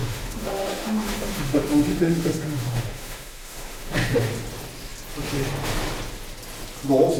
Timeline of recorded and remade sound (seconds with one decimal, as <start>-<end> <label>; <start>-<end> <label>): 0.0-4.3 remade; 4.3-7.2 recorded